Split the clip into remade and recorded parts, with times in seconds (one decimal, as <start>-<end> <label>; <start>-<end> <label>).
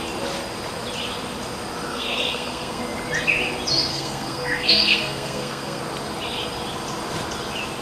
0.0-1.9 recorded; 1.9-2.8 remade; 2.8-3.9 recorded; 3.9-5.8 remade; 5.8-7.8 recorded